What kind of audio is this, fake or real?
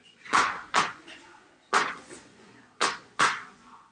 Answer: fake